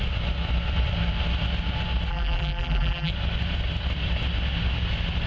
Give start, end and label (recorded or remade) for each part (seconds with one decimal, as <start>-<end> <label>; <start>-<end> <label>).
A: 0.0-2.1 recorded; 2.1-3.1 remade; 3.1-5.3 recorded